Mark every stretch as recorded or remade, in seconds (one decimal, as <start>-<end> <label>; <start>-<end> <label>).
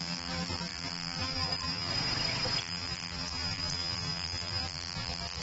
0.0-1.9 remade; 1.9-2.6 recorded; 2.6-5.4 remade